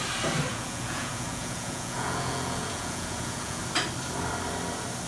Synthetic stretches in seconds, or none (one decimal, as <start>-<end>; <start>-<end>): 0.5-3.6